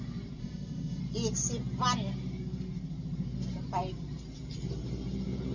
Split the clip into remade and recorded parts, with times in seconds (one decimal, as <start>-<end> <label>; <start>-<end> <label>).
0.0-0.4 recorded; 0.4-1.0 remade; 1.0-5.5 recorded